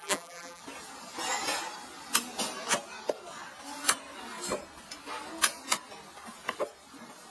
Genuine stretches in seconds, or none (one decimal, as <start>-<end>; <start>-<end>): 0.6-7.3